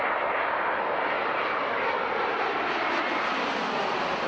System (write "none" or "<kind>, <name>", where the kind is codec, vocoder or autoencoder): none